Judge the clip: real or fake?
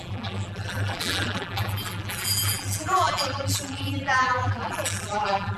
fake